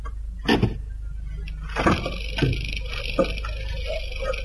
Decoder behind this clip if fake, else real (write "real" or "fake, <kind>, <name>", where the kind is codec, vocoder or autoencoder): real